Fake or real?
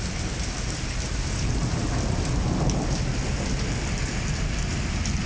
real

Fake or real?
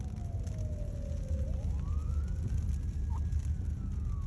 real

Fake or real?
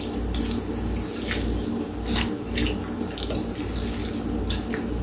real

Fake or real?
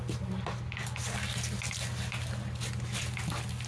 real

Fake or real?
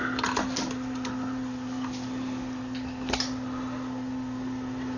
real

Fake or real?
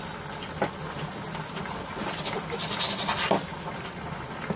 real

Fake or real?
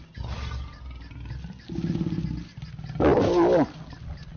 real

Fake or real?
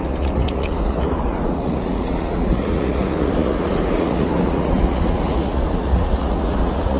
fake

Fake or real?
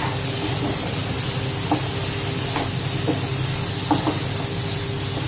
real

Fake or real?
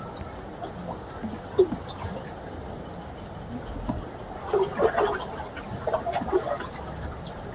real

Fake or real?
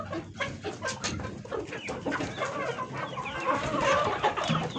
real